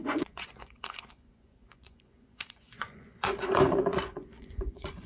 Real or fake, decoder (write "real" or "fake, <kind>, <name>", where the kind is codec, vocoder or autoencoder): fake, vocoder, Vocos